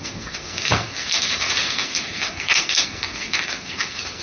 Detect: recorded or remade remade